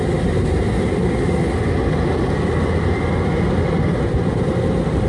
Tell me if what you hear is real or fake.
real